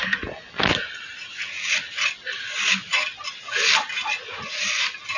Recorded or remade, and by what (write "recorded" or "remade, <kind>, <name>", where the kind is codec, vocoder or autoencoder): recorded